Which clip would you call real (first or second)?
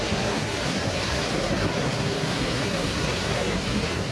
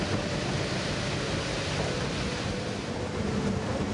second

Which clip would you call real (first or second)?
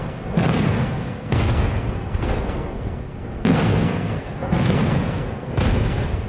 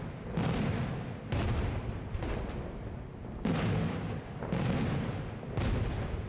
second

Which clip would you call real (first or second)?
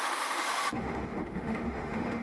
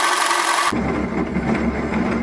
second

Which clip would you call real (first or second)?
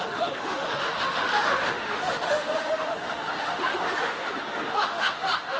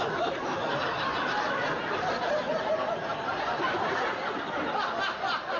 second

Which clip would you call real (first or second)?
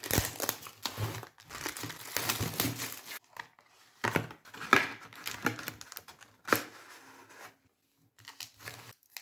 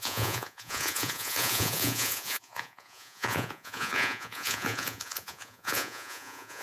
first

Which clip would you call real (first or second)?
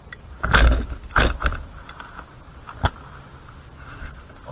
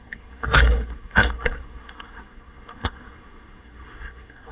first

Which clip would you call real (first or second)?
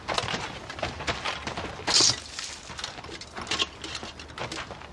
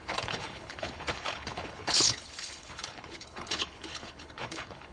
first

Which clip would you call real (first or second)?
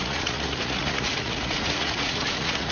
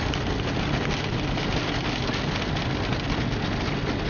second